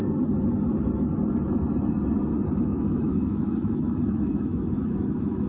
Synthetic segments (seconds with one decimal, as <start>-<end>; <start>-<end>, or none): 2.6-5.5